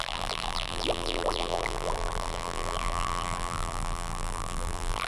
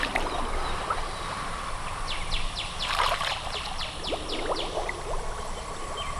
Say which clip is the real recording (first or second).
second